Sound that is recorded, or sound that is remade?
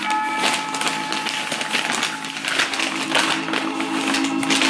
recorded